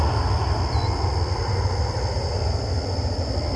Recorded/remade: recorded